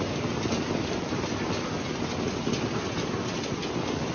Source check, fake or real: real